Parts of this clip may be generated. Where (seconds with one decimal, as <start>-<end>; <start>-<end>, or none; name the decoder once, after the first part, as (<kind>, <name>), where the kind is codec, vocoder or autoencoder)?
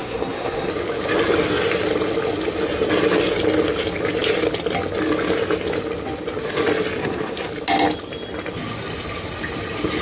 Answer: 0.0-0.7 (codec, SNAC); 7.0-7.5